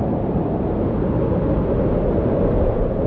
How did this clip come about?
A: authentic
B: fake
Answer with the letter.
A